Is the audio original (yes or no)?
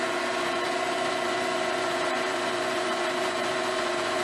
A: no